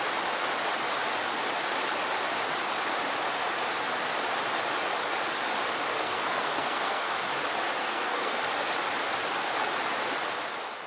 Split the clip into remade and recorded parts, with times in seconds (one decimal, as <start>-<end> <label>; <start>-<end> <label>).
0.0-5.9 recorded; 5.9-7.3 remade; 7.3-7.8 recorded; 7.8-8.4 remade; 8.4-10.9 recorded